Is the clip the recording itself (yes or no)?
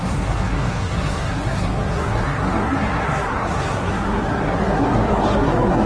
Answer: no